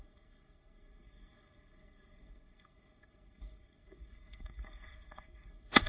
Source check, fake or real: fake